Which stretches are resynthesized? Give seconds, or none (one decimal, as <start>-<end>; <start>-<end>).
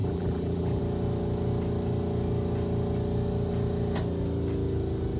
0.0-0.8